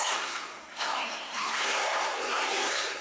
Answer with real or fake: fake